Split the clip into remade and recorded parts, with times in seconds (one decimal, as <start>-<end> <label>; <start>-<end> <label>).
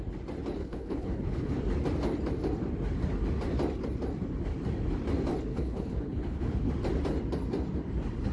0.0-0.6 recorded; 0.6-1.6 remade; 1.6-5.5 recorded; 5.5-6.7 remade; 6.7-8.3 recorded